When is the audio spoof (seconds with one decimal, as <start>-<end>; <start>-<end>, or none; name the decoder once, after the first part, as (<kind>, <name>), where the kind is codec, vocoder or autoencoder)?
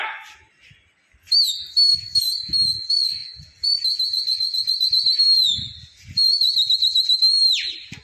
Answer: none